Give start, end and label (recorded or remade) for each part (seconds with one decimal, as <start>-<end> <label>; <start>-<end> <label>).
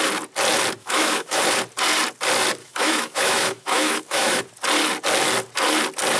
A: 0.0-0.8 recorded; 0.8-1.4 remade; 1.4-2.6 recorded; 2.6-4.4 remade; 4.4-6.2 recorded